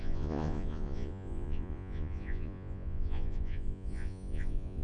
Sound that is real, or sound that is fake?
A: fake